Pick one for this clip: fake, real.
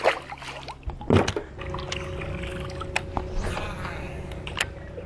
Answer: real